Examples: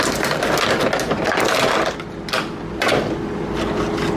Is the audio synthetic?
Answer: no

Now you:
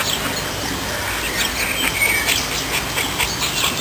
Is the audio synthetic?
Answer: no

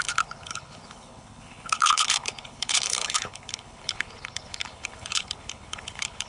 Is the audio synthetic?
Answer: yes